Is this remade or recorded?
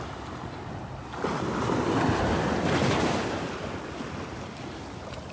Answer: recorded